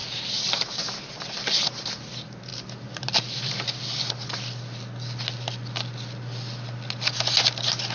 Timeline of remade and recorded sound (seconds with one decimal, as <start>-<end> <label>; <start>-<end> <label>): 0.0-7.9 recorded